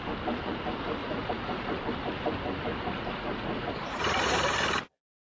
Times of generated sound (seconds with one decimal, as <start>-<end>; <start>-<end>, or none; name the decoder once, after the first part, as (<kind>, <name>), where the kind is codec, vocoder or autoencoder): 1.0-1.8 (vocoder, Vocos); 2.7-4.0